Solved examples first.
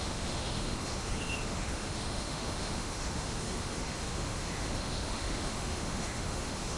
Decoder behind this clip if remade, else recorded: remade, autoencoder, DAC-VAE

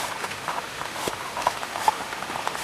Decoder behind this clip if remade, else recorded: remade, autoencoder, DAC-VAE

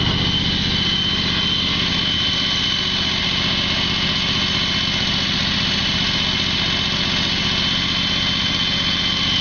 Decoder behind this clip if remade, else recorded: recorded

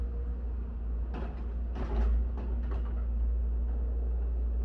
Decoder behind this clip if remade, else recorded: recorded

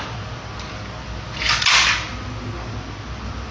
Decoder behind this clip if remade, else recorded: recorded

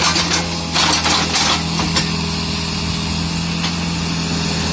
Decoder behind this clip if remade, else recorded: recorded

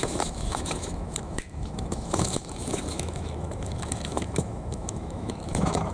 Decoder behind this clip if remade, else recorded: remade, autoencoder, DAC-VAE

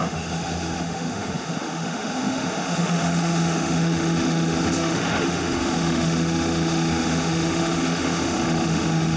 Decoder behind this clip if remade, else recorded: remade, autoencoder, DAC-VAE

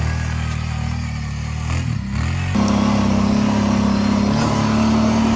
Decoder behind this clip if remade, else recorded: recorded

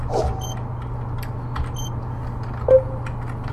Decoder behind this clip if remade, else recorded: recorded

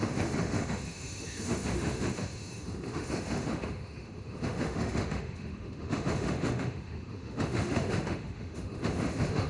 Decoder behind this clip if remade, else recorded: remade, autoencoder, DAC-VAE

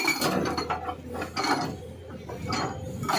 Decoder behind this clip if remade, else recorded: recorded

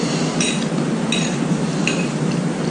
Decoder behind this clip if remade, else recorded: recorded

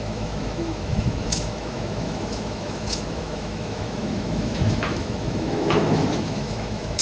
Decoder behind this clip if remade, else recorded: remade, autoencoder, DAC-VAE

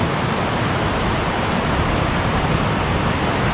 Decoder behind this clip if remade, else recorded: recorded